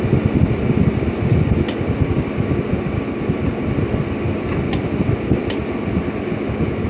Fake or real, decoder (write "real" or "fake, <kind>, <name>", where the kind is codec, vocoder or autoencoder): real